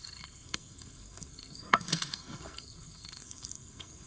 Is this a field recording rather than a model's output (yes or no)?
no